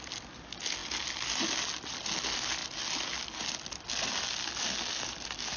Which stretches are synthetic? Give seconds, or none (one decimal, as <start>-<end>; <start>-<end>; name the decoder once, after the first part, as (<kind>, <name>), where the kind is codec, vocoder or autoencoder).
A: none